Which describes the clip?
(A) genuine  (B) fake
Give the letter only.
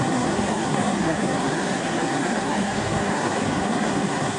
B